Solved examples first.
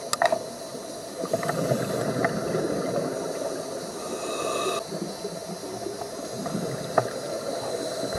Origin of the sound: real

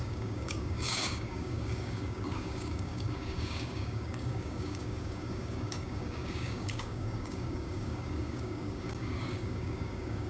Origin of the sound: fake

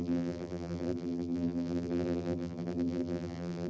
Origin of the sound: fake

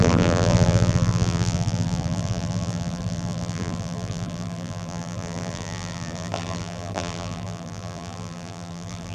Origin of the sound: fake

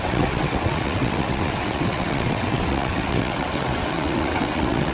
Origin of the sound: fake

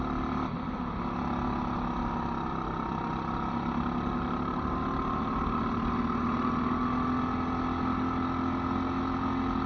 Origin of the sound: real